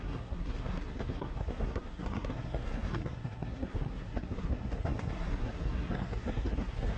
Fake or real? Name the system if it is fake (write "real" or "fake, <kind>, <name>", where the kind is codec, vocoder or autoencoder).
fake, codec, SNAC